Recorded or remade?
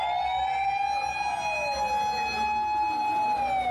recorded